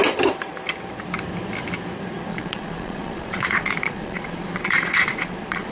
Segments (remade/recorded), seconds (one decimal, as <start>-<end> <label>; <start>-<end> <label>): 0.0-2.3 recorded; 2.3-5.7 remade